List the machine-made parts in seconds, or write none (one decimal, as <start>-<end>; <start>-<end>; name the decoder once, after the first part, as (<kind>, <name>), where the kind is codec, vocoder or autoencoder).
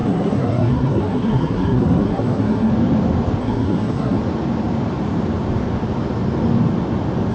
0.0-2.7 (codec, SNAC); 3.4-4.2